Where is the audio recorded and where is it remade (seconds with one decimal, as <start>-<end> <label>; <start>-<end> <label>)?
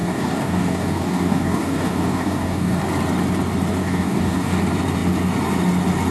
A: 0.0-2.8 remade; 2.8-3.8 recorded; 3.8-4.6 remade; 4.6-6.1 recorded